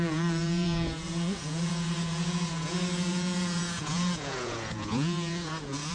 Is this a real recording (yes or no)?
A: no